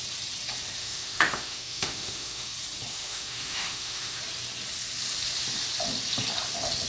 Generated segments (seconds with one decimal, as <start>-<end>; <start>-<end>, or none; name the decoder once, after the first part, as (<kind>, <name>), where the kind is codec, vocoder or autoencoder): 0.8-2.5 (autoencoder, DAC-VAE); 2.9-4.2